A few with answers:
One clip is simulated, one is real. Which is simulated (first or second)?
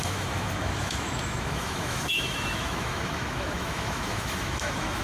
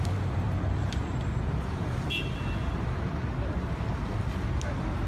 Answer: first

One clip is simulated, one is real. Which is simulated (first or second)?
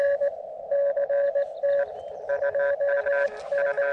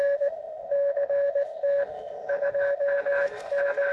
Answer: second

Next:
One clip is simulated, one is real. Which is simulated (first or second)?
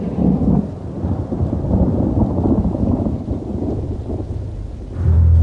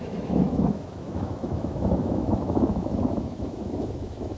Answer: second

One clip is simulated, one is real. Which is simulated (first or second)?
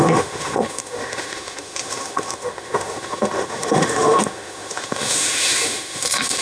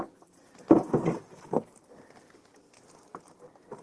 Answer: first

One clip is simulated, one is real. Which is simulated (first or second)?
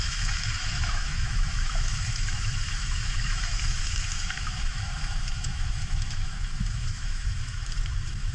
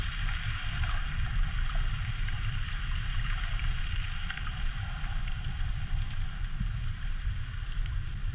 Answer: first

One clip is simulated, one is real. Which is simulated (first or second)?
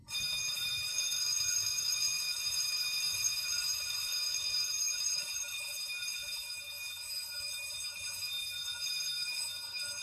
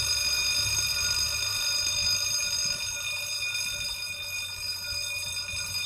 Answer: first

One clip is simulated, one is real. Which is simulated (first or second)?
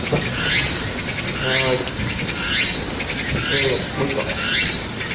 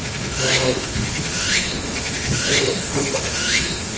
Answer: second